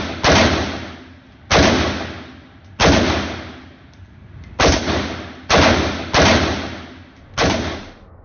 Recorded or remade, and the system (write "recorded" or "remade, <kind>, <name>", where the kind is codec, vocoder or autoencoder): recorded